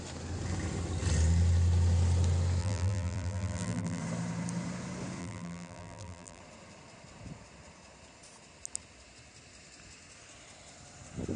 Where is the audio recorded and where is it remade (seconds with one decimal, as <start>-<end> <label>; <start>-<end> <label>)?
0.0-2.6 recorded; 2.6-4.0 remade; 4.0-5.2 recorded; 5.2-6.4 remade; 6.4-11.4 recorded